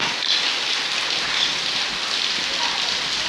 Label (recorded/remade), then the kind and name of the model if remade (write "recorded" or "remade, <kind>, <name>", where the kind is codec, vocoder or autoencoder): recorded